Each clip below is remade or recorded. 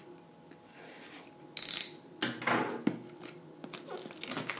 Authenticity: recorded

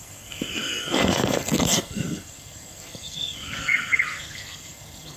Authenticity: remade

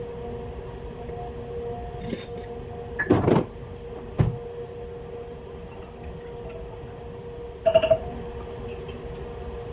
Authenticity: recorded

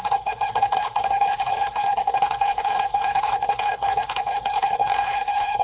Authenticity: remade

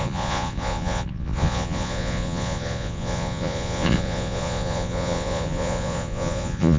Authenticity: remade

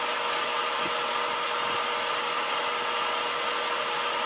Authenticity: recorded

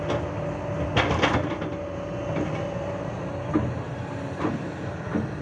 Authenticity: recorded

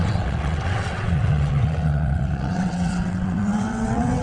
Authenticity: remade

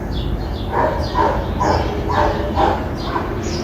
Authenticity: recorded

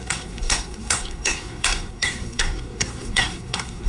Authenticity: remade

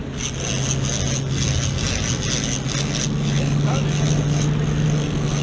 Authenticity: recorded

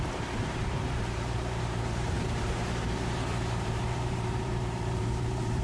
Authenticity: remade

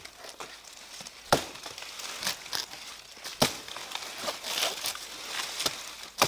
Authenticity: recorded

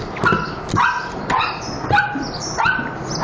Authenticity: recorded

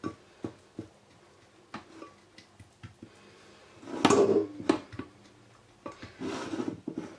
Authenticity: recorded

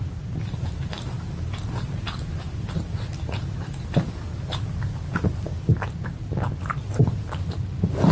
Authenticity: recorded